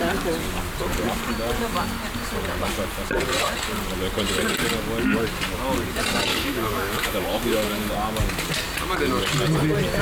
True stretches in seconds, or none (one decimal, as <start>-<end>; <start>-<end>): 0.0-6.3; 7.9-10.0